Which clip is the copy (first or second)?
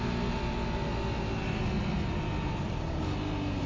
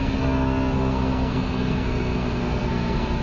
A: second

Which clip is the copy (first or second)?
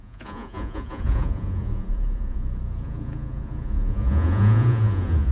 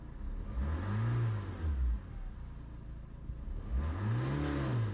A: first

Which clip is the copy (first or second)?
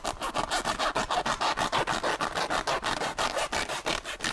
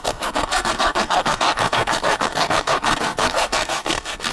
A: second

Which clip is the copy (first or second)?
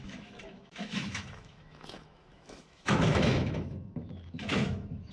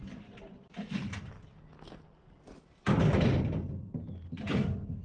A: first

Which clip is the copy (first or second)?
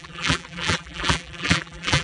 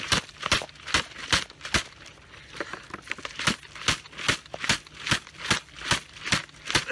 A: first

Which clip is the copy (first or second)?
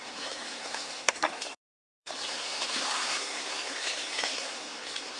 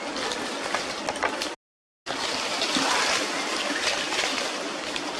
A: first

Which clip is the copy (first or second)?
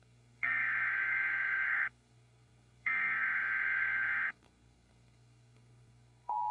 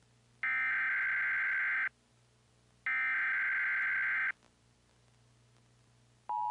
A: first